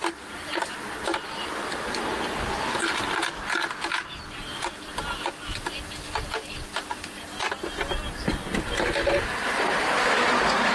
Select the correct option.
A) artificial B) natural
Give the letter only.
B